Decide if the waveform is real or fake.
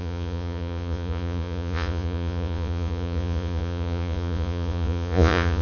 fake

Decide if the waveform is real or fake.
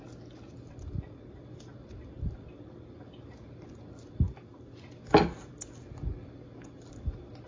real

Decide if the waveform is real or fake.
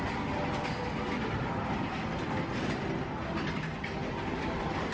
real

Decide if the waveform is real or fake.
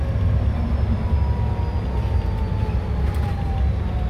real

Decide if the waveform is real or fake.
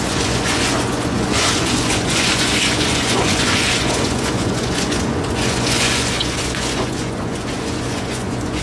fake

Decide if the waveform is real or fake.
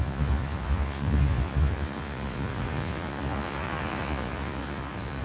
fake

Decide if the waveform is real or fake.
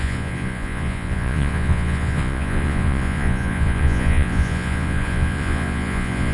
fake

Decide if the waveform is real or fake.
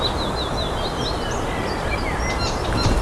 real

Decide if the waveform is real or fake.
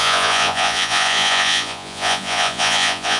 fake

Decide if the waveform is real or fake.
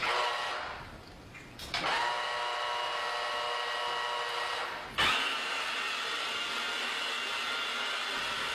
real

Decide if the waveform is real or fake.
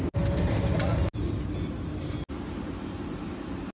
real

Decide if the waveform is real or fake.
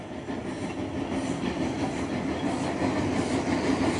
real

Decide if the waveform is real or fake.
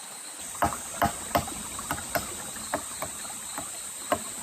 real